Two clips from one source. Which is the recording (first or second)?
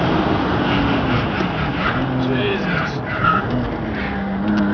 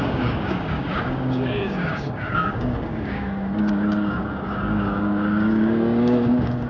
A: first